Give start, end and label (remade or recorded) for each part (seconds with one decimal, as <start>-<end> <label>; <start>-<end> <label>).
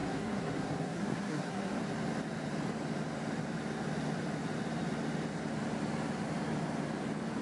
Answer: 0.0-1.8 remade; 1.8-7.4 recorded